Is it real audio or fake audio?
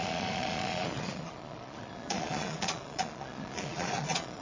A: fake